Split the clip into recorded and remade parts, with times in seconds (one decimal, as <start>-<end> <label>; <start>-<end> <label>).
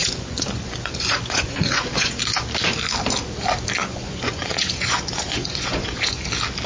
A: 0.0-2.2 remade; 2.2-3.8 recorded; 3.8-6.2 remade; 6.2-6.7 recorded